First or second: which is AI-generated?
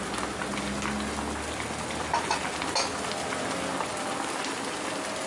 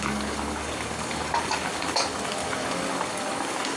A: second